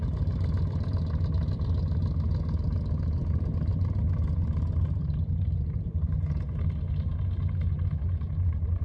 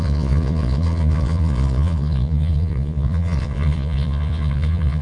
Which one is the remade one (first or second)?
second